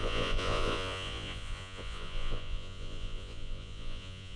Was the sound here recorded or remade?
remade